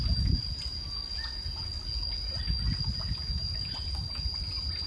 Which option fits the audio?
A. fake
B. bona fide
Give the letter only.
B